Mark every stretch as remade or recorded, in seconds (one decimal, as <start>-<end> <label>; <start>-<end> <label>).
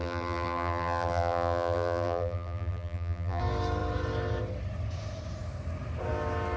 0.0-3.4 remade; 3.4-6.6 recorded